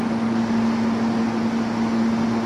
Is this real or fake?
real